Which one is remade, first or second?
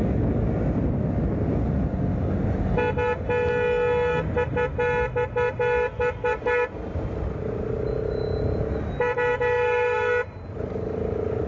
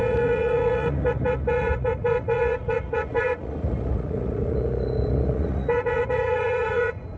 second